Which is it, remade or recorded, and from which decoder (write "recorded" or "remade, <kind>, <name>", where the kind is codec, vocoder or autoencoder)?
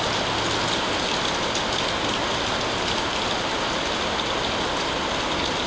recorded